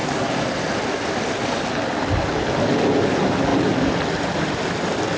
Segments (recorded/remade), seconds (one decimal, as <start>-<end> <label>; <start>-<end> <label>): 0.0-5.2 recorded